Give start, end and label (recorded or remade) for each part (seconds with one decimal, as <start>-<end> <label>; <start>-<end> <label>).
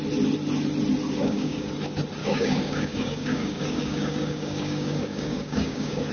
0.0-1.2 recorded; 1.2-1.7 remade; 1.7-2.2 recorded; 2.2-6.1 remade